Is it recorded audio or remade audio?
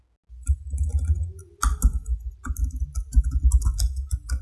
recorded